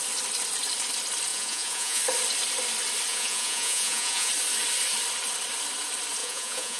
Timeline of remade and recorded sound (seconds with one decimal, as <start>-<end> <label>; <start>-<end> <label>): 0.0-1.3 recorded; 1.3-2.0 remade; 2.0-3.1 recorded; 3.1-4.3 remade; 4.3-6.2 recorded; 6.2-6.8 remade